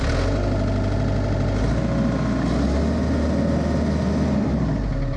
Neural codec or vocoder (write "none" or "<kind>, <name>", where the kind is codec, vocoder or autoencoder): none